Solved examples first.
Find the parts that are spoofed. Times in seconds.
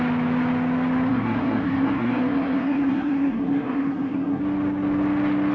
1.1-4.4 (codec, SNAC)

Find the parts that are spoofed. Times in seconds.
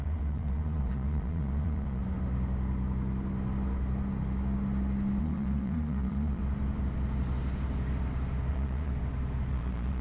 0.0-2.0 (vocoder, Vocos); 5.2-6.4; 8.5-8.9; 9.5-10.0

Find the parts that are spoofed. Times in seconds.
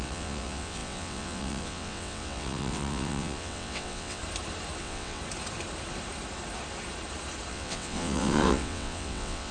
0.0-4.2 (vocoder, WaveNeXt); 4.8-5.2; 7.5-9.5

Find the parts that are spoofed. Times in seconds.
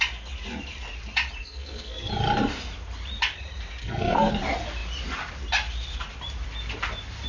1.4-2.1 (codec, SNAC); 3.8-4.3